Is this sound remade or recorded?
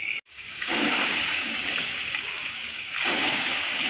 remade